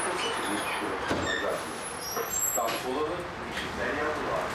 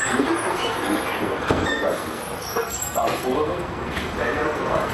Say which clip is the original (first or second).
first